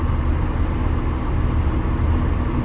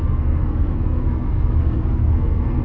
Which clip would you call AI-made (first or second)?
second